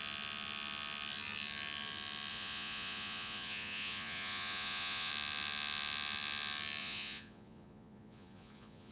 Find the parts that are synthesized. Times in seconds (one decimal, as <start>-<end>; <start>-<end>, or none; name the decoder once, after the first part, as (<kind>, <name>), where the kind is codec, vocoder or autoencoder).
2.3-5.1 (vocoder, Vocos); 6.8-8.9